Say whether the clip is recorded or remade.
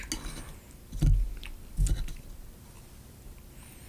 recorded